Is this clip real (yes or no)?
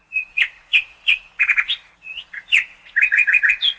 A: no